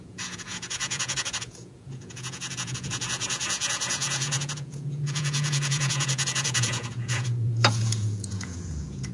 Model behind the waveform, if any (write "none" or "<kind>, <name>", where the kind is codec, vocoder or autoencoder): vocoder, Vocos